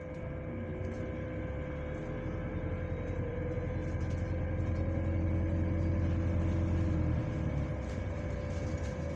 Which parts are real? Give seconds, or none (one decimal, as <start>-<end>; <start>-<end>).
0.0-9.2